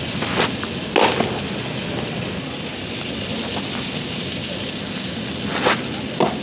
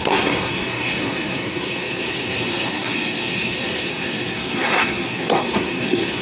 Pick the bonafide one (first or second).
first